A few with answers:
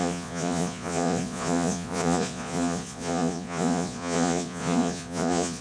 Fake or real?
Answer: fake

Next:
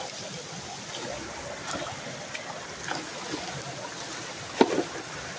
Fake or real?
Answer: real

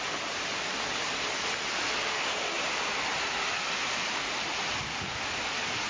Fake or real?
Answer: real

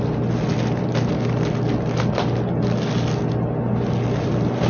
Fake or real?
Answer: real